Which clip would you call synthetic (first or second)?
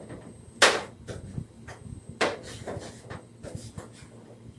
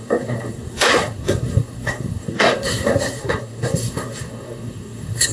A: second